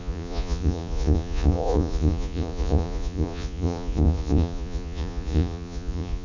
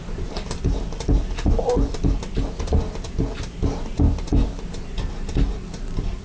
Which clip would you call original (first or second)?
second